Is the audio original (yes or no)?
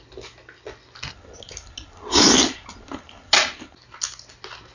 yes